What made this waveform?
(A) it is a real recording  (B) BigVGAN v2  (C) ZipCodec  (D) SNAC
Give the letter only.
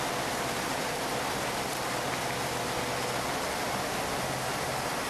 A